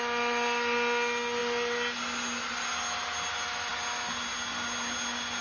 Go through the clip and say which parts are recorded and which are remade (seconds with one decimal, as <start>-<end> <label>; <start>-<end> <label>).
0.0-5.4 recorded